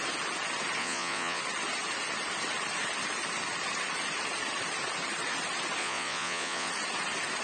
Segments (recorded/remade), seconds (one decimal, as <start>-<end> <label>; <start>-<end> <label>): 0.0-0.8 recorded; 0.8-1.4 remade; 1.4-5.8 recorded; 5.8-6.7 remade; 6.7-7.4 recorded

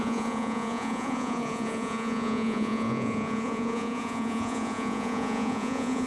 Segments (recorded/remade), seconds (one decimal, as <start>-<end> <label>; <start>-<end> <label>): 0.0-6.1 remade

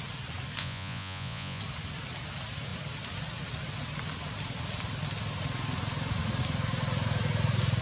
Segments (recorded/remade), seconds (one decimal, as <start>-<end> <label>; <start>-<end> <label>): 0.0-0.6 recorded; 0.6-1.6 remade; 1.6-7.8 recorded

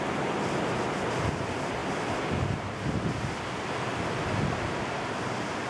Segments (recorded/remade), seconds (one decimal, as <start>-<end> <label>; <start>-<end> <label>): 0.0-5.7 recorded

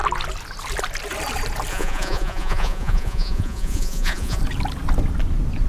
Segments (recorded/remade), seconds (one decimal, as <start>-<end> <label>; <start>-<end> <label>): 0.0-1.7 recorded; 1.7-4.4 remade; 4.4-5.7 recorded

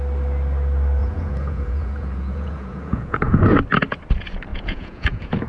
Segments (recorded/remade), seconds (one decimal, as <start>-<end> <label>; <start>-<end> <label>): 0.0-1.0 recorded; 1.0-3.4 remade; 3.4-4.5 recorded; 4.5-5.5 remade